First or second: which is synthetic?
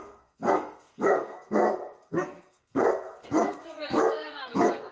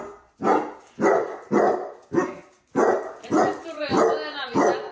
first